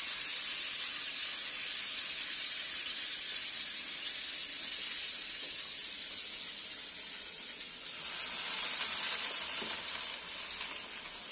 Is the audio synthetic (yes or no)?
yes